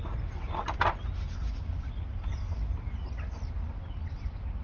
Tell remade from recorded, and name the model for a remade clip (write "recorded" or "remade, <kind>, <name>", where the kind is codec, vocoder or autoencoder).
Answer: recorded